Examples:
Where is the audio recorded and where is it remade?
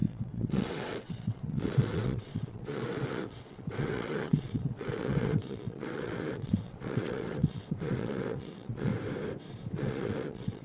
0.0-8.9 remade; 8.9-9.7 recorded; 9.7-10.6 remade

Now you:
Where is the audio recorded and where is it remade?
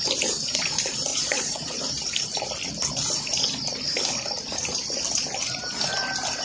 0.0-1.1 recorded; 1.1-1.8 remade; 1.8-6.4 recorded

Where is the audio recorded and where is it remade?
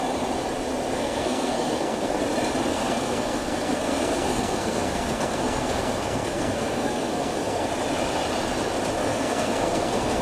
0.0-0.9 recorded; 0.9-2.2 remade; 2.2-2.7 recorded; 2.7-7.7 remade; 7.7-9.0 recorded; 9.0-10.2 remade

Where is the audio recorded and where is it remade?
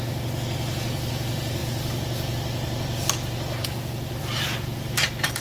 0.0-5.4 recorded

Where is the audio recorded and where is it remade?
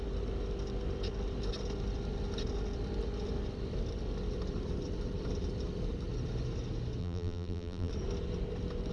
0.0-7.0 recorded; 7.0-7.9 remade; 7.9-8.9 recorded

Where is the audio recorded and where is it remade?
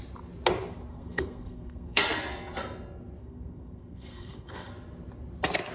0.0-0.9 recorded; 0.9-2.0 remade; 2.0-3.2 recorded; 3.2-4.7 remade; 4.7-5.7 recorded